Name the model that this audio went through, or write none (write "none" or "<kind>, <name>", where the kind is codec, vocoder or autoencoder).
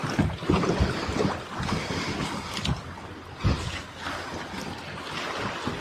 none